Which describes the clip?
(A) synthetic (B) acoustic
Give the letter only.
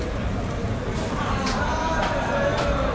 B